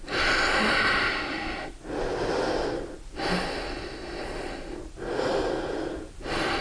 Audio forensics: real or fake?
real